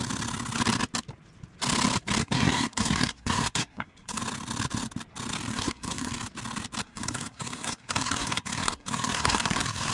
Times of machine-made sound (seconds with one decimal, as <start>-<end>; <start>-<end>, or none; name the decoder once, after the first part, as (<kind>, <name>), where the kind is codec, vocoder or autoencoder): 2.2-4.2 (codec, SNAC); 5.5-6.1; 6.8-9.9